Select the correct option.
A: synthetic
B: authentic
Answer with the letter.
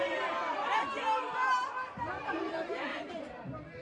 A